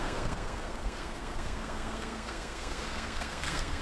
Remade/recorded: remade